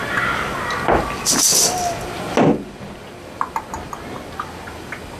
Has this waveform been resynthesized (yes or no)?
no